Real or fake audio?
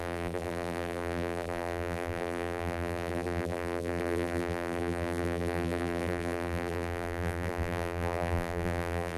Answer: fake